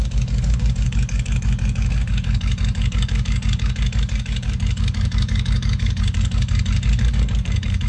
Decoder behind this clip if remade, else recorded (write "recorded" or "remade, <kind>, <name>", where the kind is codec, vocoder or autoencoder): remade, codec, DAC